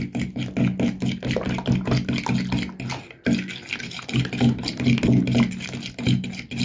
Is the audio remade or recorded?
recorded